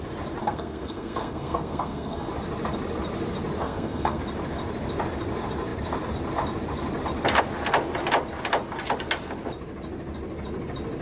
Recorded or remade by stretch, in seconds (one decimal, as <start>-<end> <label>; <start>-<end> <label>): 0.0-0.4 recorded; 0.4-2.3 remade; 2.3-3.6 recorded; 3.6-4.2 remade; 4.2-11.0 recorded